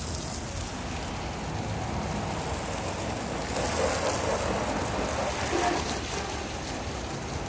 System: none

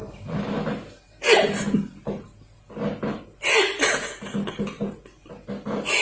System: none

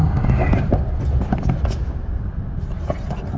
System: none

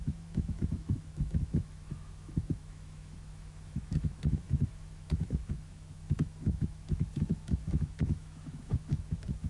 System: autoencoder, DAC-VAE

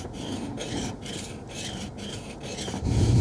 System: none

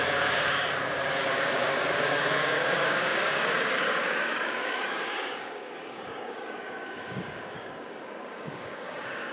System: codec, DAC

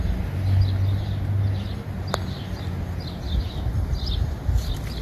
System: none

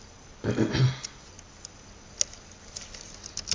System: none